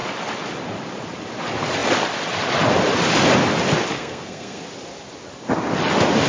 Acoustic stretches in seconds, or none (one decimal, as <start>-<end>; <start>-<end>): 0.0-3.9; 4.6-6.3